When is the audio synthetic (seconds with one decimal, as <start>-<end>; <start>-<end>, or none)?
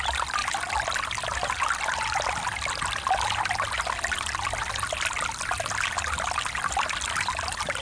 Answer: none